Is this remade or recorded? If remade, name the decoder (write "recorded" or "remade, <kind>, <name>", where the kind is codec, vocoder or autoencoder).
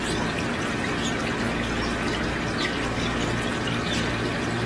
recorded